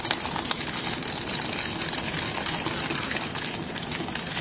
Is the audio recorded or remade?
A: recorded